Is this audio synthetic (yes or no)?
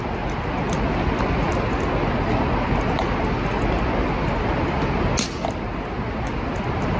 no